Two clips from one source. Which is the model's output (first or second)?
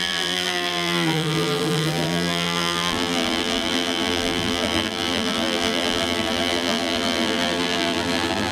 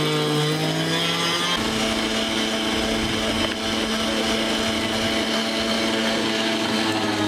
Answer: first